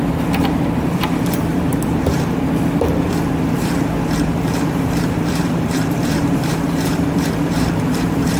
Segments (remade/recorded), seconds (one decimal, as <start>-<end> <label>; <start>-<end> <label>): 0.0-8.4 remade